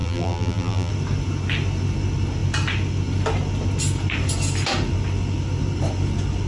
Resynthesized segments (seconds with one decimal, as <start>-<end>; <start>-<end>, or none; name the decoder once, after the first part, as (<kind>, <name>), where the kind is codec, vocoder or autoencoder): 0.0-0.9 (vocoder, BigVGAN v2)